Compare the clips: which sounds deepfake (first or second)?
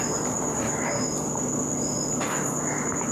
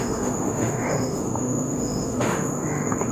second